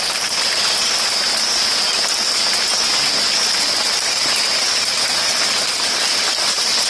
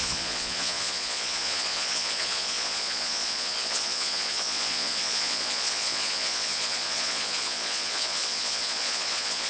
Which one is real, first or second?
first